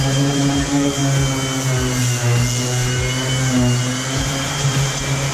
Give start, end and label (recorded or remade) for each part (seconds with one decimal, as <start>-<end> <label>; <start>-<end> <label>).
0.0-1.0 remade; 1.0-4.2 recorded; 4.2-5.3 remade